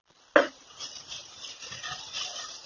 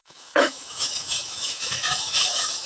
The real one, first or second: first